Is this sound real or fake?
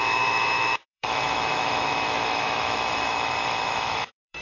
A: fake